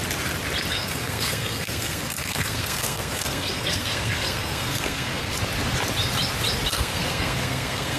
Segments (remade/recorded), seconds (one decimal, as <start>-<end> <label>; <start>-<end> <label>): 0.0-0.7 recorded; 0.7-5.3 remade; 5.3-6.7 recorded; 6.7-8.0 remade

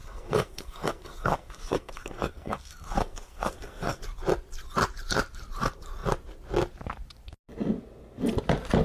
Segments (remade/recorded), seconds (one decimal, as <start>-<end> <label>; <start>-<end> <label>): 0.0-4.0 remade; 4.0-8.8 recorded

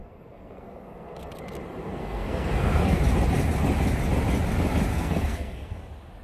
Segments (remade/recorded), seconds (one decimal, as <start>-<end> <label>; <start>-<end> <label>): 0.0-1.3 remade; 1.3-1.8 recorded; 1.8-3.0 remade; 3.0-4.9 recorded; 4.9-5.8 remade; 5.8-6.2 recorded

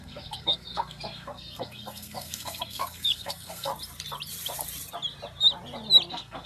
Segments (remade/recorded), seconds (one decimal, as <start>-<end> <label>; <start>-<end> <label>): 0.0-3.7 remade; 3.7-6.1 recorded; 6.1-6.5 remade

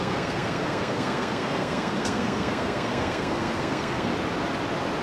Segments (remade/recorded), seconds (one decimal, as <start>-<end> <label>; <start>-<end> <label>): 0.0-4.1 remade; 4.1-5.0 recorded

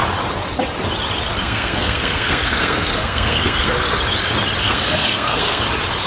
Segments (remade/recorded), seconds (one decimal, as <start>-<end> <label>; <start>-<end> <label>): 0.0-1.4 recorded; 1.4-3.7 remade; 3.7-4.6 recorded; 4.6-5.6 remade; 5.6-6.1 recorded

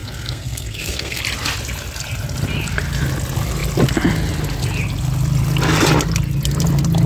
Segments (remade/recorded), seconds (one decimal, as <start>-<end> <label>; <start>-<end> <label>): 0.0-1.2 remade; 1.2-7.1 recorded